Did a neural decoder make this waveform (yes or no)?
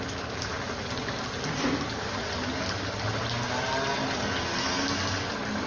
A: no